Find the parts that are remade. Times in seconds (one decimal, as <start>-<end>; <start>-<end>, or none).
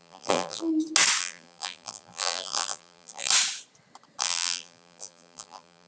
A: 0.0-0.7; 1.2-3.3; 4.2-5.9